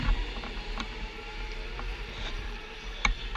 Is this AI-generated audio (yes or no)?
yes